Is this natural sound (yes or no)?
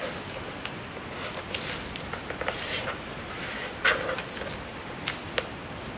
yes